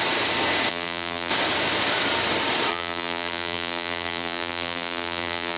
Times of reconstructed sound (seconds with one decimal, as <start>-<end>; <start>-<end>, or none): 0.7-1.3; 2.7-5.6